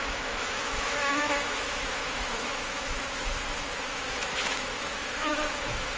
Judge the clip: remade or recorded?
remade